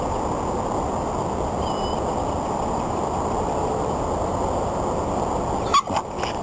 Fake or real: real